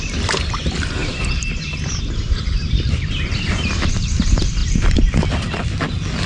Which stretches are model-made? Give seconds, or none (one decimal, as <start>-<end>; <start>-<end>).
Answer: 1.0-4.1